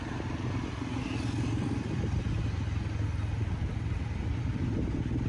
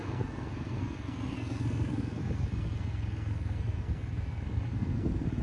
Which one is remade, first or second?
second